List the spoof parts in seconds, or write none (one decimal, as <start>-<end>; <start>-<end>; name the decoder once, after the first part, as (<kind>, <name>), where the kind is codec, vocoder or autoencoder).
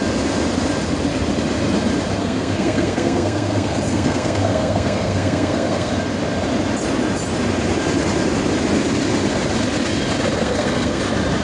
2.2-5.9 (codec, SNAC); 10.4-11.0